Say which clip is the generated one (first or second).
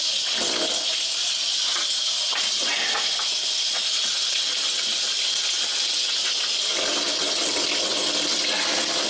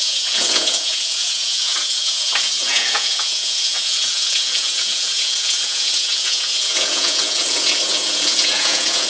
second